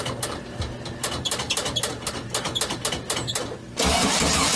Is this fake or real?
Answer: real